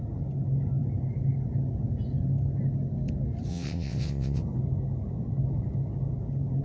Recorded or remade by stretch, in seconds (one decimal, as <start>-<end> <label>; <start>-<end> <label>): 0.0-3.5 recorded; 3.5-4.4 remade; 4.4-6.6 recorded